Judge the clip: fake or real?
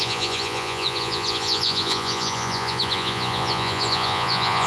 fake